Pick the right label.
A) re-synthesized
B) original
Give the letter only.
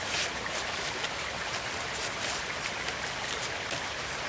B